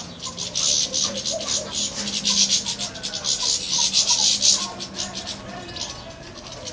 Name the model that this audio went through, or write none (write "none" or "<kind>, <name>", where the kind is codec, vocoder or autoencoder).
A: none